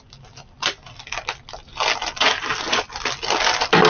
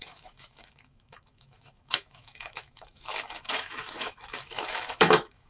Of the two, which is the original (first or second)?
first